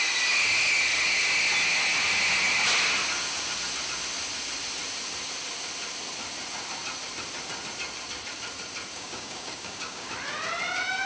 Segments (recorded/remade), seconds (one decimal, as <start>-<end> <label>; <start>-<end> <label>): 0.0-8.9 recorded; 8.9-10.1 remade; 10.1-11.1 recorded